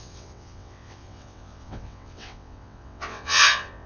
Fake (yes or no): yes